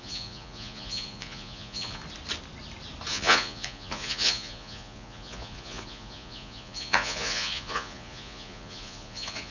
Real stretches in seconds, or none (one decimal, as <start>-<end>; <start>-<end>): 2.0-3.1